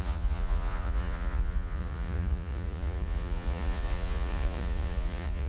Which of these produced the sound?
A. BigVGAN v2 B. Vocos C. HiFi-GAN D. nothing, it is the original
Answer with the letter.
B